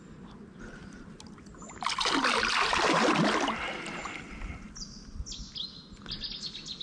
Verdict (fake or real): real